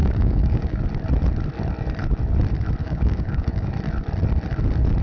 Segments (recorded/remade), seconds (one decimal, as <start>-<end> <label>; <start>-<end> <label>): 0.0-0.8 remade; 0.8-2.8 recorded; 2.8-3.7 remade; 3.7-5.0 recorded